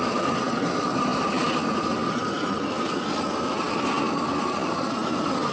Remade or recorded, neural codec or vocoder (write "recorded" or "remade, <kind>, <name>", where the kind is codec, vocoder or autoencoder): recorded